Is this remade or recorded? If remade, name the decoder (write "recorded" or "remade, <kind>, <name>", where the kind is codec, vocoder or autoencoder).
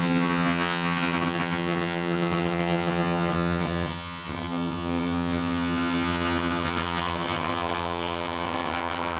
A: remade, vocoder, HiFi-GAN